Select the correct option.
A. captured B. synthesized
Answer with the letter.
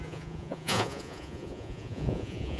B